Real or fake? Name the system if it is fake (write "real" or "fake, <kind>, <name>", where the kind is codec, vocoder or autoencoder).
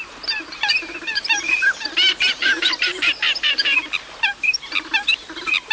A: real